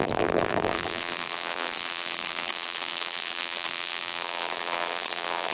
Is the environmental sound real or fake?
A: fake